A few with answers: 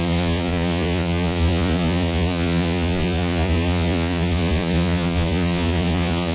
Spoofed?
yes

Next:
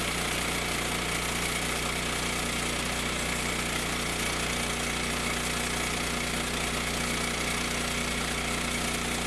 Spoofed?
no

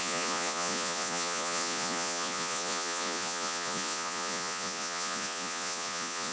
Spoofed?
yes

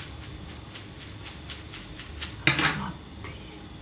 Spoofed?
no